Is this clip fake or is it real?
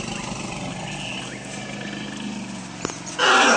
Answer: real